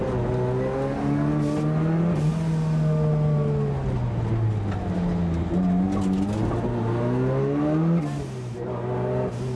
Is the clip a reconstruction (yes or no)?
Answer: no